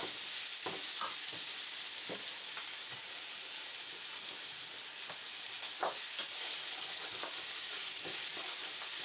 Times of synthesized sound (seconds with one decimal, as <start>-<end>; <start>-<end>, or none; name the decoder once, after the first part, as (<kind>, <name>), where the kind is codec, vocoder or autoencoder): 6.7-7.2 (codec, HILCodec)